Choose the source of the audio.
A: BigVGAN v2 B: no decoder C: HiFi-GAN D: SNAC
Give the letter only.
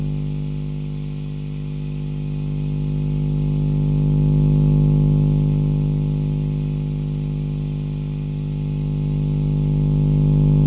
B